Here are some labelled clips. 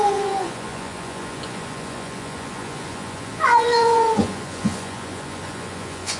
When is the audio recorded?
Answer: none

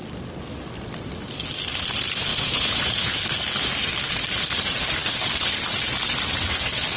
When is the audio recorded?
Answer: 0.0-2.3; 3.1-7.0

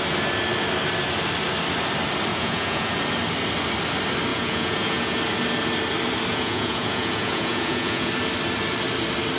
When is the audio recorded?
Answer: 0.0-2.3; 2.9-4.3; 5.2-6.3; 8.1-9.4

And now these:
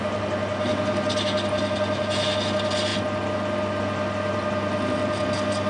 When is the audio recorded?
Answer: 0.0-5.7

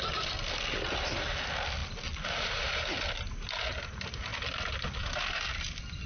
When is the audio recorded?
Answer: 0.0-6.1